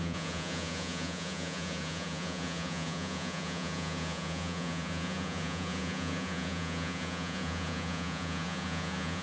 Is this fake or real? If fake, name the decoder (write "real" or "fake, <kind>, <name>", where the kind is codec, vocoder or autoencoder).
fake, vocoder, Vocos